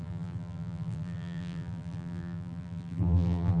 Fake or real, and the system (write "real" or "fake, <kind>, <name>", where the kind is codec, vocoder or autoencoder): fake, vocoder, BigVGAN v2